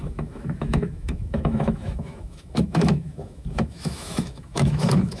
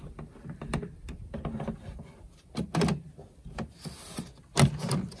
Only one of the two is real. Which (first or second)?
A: second